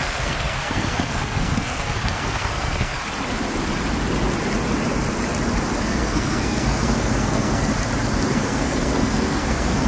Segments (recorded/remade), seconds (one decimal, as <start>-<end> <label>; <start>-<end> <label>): 0.0-3.0 remade; 3.0-5.8 recorded; 5.8-7.7 remade; 7.7-8.3 recorded; 8.3-9.9 remade